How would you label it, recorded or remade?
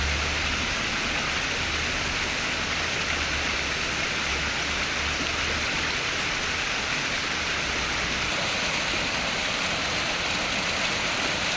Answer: recorded